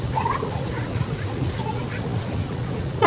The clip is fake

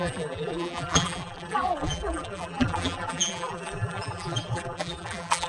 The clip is fake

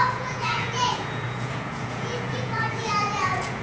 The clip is fake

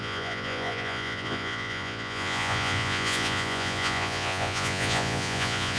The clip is fake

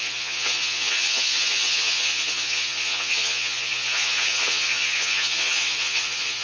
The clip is fake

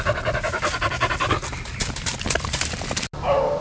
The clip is real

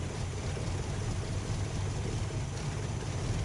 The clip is fake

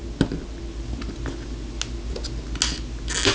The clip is real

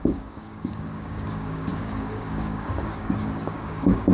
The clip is fake